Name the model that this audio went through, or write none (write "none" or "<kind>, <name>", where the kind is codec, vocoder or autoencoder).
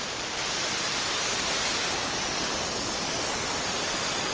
none